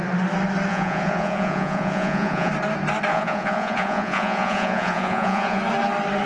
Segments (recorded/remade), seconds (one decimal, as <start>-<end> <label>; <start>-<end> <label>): 0.0-0.7 recorded; 0.7-2.5 remade; 2.5-3.1 recorded; 3.1-5.6 remade; 5.6-6.3 recorded